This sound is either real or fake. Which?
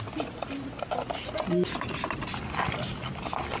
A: real